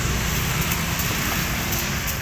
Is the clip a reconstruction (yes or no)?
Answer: no